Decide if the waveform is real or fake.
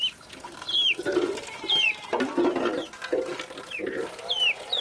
real